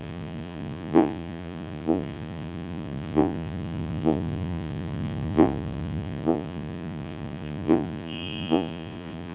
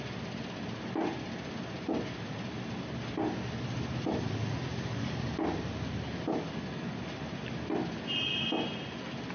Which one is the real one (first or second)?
second